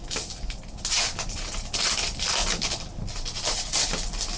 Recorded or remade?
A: recorded